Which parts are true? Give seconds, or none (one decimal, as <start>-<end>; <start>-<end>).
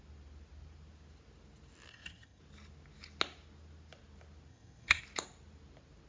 0.0-1.9; 2.4-4.5; 5.0-6.1